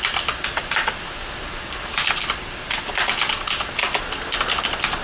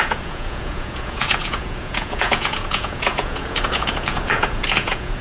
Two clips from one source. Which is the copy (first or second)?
second